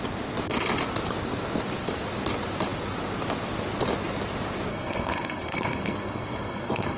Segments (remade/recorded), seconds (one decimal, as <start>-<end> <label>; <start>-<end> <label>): 0.0-4.7 recorded; 4.7-7.0 remade